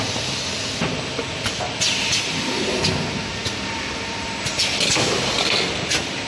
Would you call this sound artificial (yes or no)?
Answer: no